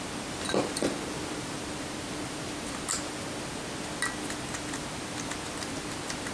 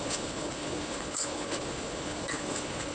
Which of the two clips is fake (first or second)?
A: second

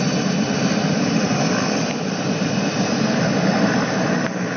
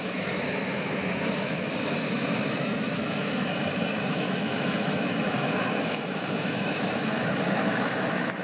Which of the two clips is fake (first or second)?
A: second